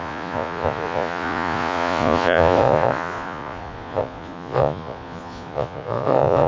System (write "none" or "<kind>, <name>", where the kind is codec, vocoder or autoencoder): vocoder, Vocos